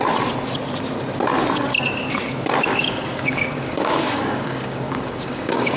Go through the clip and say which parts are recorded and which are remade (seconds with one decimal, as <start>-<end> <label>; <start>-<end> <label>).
0.0-2.7 recorded; 2.7-5.8 remade